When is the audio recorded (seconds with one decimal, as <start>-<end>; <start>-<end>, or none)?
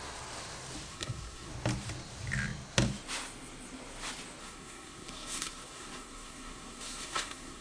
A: 0.0-0.9; 1.5-4.4